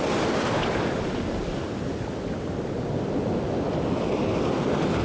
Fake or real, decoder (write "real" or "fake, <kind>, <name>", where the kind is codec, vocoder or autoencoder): real